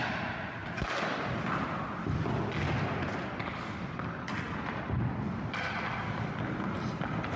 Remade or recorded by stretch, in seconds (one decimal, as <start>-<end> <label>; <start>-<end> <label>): 0.0-7.4 recorded